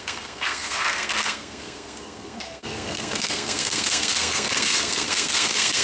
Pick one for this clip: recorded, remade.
remade